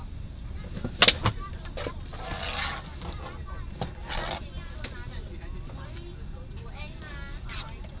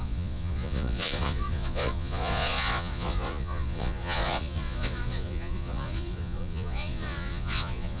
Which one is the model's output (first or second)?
second